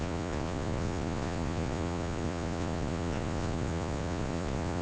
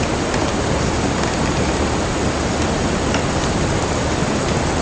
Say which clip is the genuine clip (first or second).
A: second